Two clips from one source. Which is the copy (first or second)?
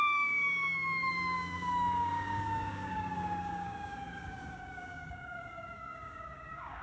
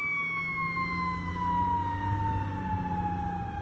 first